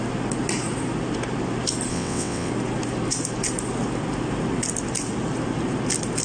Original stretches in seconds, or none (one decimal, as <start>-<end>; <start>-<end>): 0.0-1.9; 2.5-6.2